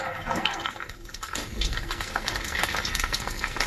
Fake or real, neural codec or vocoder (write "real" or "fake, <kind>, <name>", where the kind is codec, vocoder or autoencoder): fake, codec, SNAC